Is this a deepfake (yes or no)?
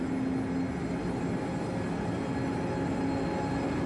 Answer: no